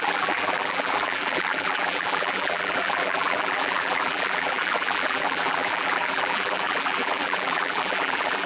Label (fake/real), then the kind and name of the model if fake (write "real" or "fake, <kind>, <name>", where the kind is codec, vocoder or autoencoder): fake, vocoder, BigVGAN v2